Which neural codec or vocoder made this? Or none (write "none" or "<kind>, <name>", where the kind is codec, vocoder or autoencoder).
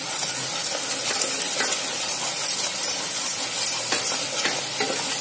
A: none